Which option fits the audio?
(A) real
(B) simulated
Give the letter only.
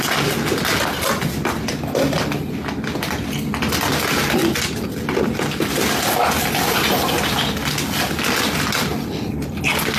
A